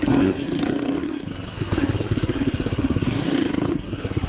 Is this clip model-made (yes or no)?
yes